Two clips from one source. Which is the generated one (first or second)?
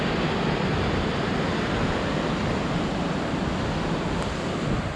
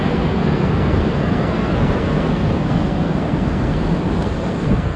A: second